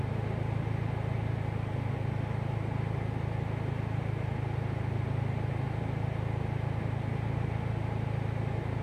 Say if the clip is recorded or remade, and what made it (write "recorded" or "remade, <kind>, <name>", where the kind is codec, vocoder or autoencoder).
recorded